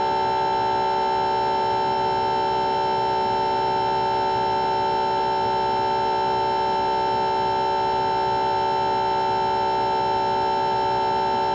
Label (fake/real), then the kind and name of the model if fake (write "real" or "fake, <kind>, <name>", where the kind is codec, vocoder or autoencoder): real